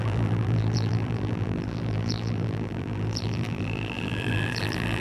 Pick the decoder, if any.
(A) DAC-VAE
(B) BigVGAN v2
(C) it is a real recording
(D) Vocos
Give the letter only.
B